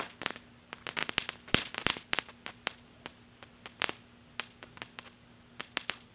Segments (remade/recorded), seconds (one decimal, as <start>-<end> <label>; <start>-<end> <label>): 0.0-6.1 recorded